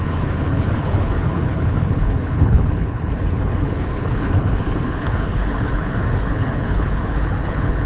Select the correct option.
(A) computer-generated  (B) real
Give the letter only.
A